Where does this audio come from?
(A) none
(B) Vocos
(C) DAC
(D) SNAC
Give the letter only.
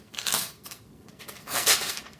D